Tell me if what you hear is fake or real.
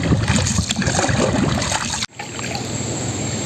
real